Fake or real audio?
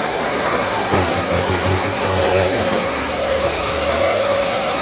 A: fake